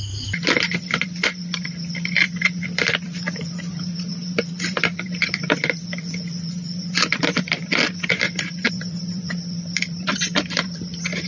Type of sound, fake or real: fake